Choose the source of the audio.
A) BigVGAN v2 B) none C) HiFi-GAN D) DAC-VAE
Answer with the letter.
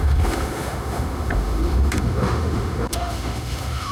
D